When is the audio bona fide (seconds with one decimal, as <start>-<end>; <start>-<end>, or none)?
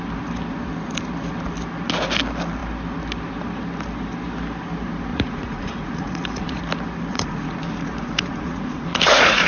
0.0-5.1; 6.6-7.1